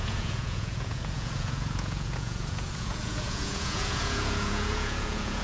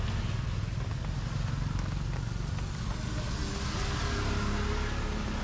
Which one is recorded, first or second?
second